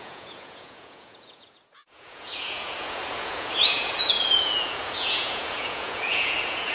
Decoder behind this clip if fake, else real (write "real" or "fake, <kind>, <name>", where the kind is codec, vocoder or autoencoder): fake, vocoder, Vocos